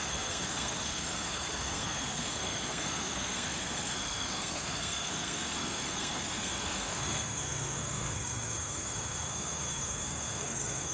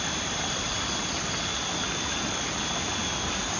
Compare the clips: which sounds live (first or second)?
second